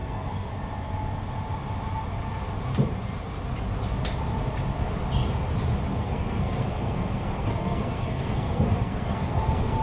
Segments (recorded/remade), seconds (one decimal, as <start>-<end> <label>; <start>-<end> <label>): 0.0-0.5 remade; 0.5-5.9 recorded; 5.9-9.8 remade